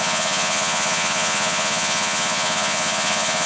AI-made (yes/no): yes